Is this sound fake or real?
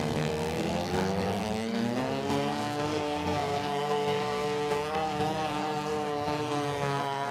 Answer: fake